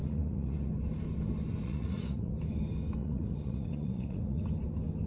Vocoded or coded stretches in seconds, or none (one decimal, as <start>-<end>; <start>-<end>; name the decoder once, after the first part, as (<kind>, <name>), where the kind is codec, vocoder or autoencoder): 0.0-0.7 (vocoder, Vocos); 1.6-2.3; 3.0-4.4